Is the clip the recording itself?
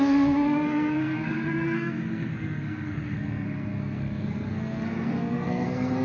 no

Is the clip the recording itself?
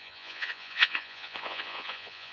no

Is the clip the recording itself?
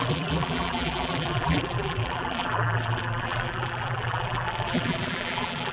no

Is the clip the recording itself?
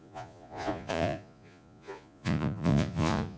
no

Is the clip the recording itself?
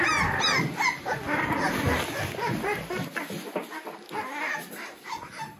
yes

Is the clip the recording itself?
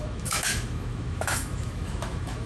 no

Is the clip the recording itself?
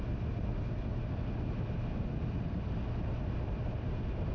yes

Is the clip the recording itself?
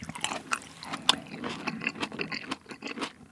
yes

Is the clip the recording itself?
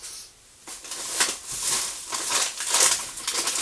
yes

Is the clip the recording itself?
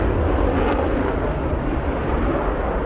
yes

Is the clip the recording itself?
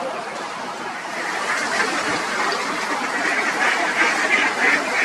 no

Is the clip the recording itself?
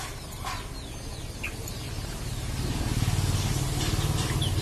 yes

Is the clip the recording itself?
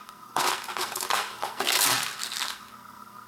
no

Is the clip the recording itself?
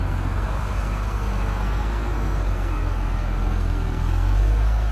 no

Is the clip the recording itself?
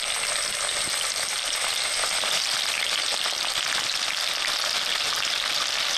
yes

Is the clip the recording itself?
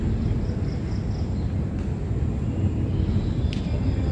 yes